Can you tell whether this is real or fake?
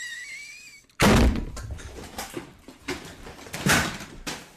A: fake